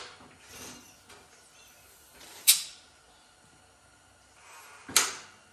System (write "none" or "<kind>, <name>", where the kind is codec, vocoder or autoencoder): none